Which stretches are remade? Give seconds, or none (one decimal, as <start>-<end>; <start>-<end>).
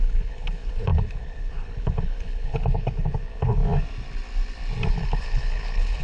0.0-3.6; 4.9-6.0